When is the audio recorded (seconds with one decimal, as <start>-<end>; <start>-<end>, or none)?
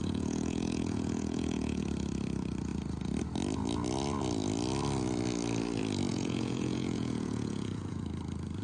1.8-6.1; 8.0-8.6